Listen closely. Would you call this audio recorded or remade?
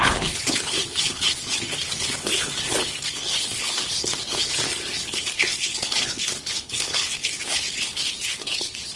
remade